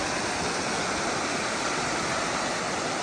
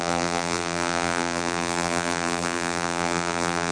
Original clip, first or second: first